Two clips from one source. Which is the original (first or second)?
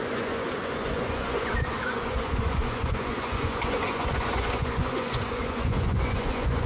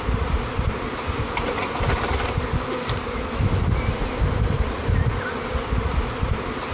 second